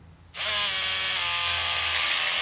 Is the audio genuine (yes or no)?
yes